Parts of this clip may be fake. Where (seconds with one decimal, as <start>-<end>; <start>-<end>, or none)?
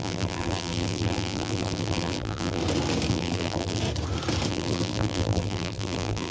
0.0-2.6; 3.1-3.8; 4.5-6.3